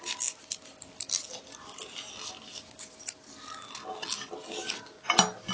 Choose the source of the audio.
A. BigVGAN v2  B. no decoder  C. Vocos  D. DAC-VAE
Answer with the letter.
B